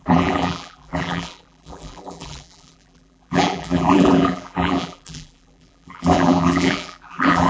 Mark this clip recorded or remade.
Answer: remade